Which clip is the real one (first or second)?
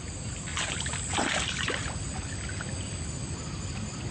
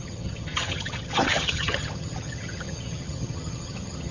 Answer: first